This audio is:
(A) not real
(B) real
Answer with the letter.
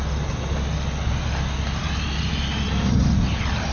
B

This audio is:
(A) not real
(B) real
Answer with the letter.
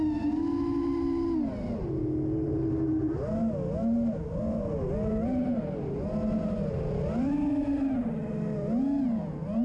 B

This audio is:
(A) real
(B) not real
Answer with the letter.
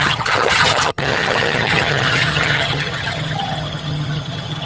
B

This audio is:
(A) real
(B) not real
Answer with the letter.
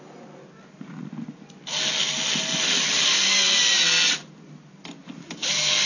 A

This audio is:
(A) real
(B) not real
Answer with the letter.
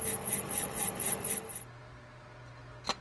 A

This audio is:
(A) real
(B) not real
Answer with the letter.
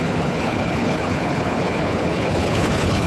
B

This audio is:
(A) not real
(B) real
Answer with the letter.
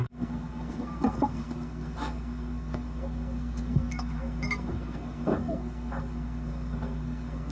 A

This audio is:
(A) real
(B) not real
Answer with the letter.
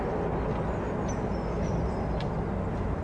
A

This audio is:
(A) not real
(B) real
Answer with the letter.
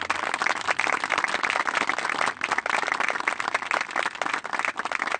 B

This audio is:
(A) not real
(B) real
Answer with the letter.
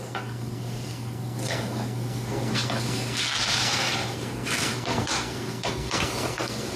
A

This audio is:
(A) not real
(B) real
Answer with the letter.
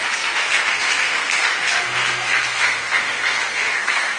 A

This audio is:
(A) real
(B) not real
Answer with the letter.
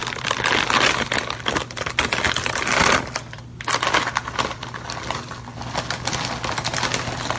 A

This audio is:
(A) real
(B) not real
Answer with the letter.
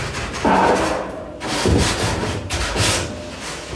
A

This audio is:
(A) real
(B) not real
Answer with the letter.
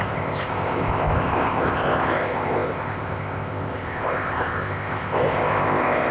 B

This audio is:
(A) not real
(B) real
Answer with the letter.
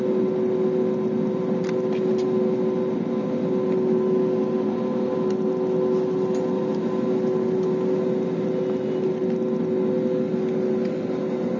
B